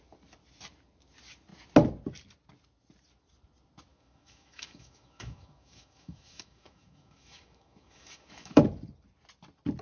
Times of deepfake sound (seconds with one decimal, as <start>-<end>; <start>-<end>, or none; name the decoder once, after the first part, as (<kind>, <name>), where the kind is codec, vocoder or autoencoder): 3.9-8.6 (autoencoder, DAC-VAE)